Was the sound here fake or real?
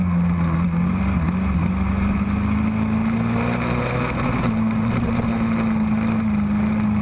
real